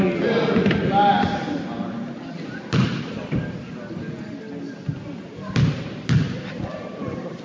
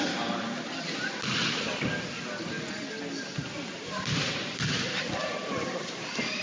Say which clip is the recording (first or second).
first